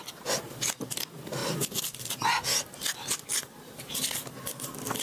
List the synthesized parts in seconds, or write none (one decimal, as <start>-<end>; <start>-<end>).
none